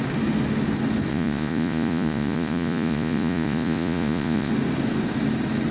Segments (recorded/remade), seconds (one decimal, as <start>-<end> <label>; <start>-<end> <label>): 0.0-1.1 recorded; 1.1-4.5 remade; 4.5-5.7 recorded